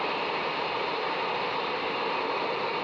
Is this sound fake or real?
real